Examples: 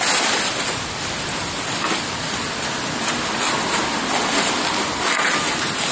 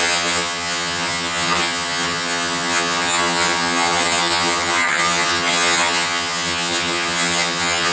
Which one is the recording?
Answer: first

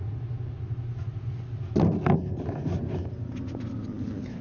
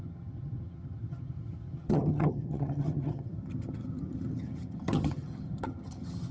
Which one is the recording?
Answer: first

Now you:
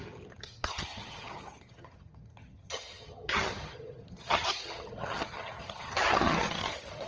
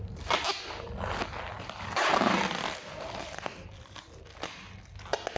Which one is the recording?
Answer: second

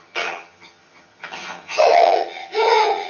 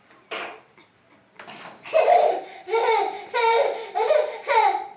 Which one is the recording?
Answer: second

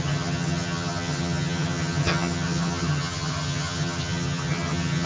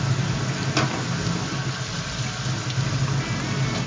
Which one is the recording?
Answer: second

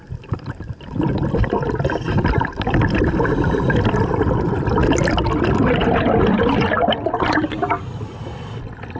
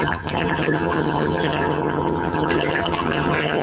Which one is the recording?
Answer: first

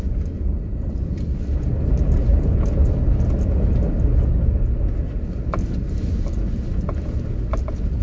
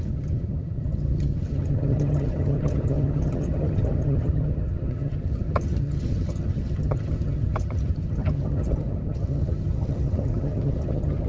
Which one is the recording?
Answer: first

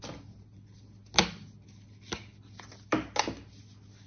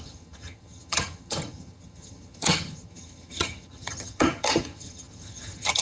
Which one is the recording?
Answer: first